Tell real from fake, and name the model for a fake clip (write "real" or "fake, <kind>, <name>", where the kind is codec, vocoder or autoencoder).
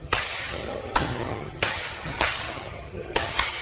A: fake, vocoder, HiFi-GAN